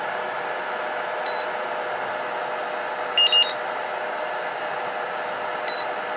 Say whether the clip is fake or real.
real